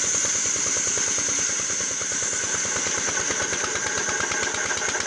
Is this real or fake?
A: real